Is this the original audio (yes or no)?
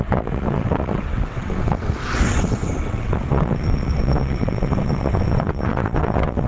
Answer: no